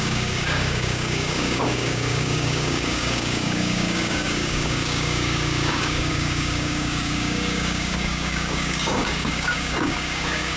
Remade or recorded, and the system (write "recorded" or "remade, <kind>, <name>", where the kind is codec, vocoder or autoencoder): remade, codec, DAC